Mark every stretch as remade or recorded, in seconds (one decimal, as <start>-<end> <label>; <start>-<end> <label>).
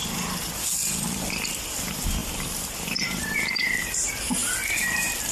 0.0-1.3 recorded; 1.3-2.2 remade; 2.2-3.3 recorded; 3.3-4.4 remade; 4.4-5.3 recorded